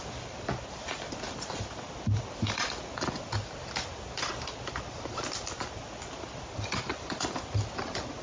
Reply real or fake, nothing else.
real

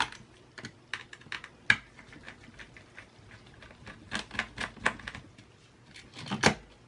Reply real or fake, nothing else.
real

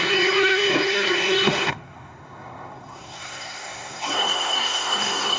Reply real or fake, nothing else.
fake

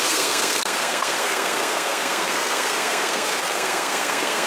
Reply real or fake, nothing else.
fake